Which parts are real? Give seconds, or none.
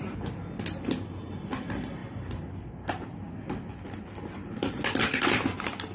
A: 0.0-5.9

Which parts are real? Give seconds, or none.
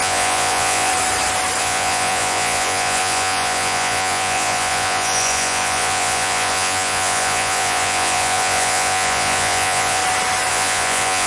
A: 0.9-1.6; 10.0-10.5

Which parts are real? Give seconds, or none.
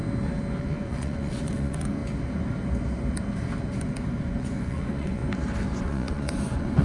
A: 0.0-0.6; 2.0-4.2; 5.2-5.8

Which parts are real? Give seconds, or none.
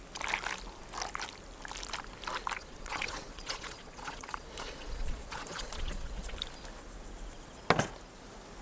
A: 0.0-2.6; 6.3-8.6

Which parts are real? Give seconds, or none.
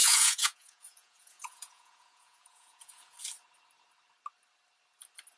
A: 3.2-5.4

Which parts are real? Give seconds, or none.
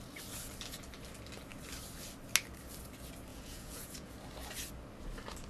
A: 0.0-3.3; 4.1-5.5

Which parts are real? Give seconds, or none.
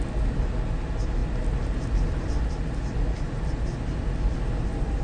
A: 0.0-5.0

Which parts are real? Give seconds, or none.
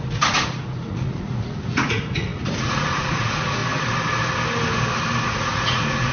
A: 3.6-5.2